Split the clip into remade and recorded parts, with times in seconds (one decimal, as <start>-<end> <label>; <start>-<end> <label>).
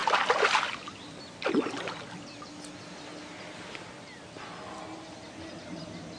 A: 0.0-6.2 recorded